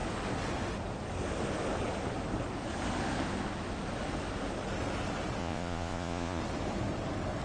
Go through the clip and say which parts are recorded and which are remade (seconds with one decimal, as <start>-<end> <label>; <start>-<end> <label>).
0.0-5.4 recorded; 5.4-6.4 remade; 6.4-7.4 recorded